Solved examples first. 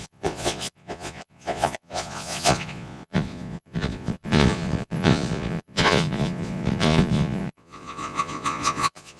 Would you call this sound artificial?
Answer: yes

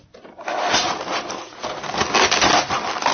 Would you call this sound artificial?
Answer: no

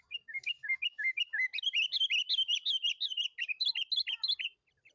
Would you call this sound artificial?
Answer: no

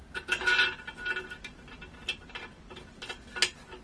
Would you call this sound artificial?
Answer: no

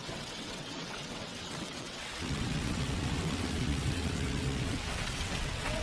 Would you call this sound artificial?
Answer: yes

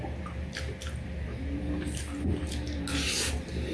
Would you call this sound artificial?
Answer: no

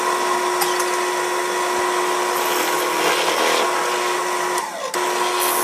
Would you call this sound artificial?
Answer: no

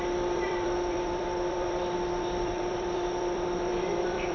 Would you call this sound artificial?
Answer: yes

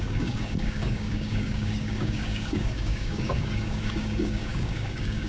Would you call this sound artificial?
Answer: yes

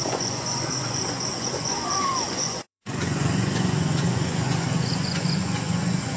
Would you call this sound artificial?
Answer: yes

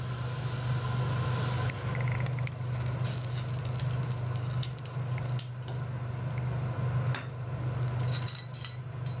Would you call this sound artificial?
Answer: no